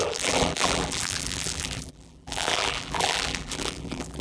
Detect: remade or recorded remade